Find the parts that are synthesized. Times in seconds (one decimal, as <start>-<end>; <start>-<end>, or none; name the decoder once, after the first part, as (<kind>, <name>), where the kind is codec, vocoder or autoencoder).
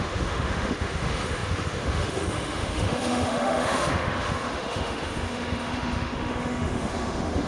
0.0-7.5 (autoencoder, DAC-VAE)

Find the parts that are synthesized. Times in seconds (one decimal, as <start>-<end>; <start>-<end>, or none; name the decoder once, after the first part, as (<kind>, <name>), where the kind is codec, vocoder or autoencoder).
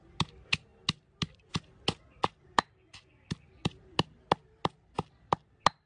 none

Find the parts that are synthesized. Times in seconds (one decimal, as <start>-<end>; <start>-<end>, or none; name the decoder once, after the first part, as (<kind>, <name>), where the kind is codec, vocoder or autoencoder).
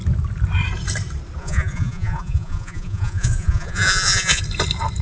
1.4-4.4 (vocoder, Vocos)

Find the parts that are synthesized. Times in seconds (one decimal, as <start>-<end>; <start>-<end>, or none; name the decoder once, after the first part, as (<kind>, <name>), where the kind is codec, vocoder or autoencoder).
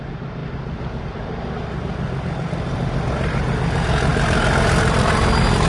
4.1-5.7 (vocoder, BigVGAN v2)